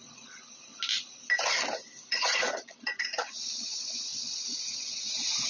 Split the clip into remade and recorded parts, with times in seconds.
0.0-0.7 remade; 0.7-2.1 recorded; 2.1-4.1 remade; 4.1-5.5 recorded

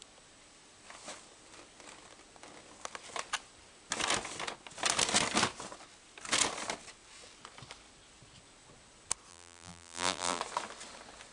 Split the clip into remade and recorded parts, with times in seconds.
0.0-9.3 recorded; 9.3-10.4 remade; 10.4-11.3 recorded

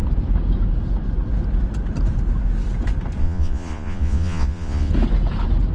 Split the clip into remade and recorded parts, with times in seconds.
0.0-3.2 recorded; 3.2-4.9 remade; 4.9-5.7 recorded